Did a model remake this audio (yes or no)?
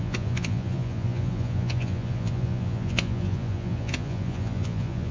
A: yes